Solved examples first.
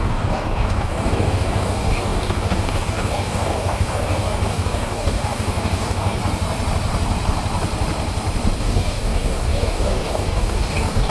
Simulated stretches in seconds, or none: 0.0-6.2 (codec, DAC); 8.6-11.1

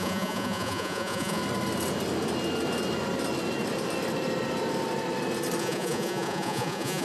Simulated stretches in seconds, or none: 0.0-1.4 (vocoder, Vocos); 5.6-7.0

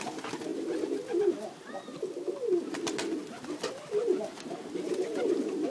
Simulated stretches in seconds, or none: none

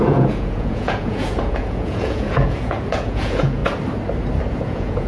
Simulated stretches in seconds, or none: 0.0-3.6 (vocoder, Vocos); 4.5-5.1